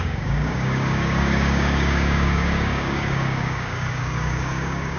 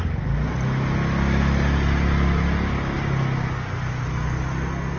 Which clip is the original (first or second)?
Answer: second